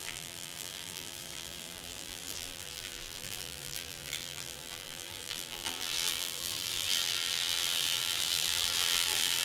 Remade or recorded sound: remade